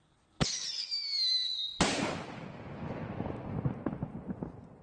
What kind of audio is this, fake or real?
real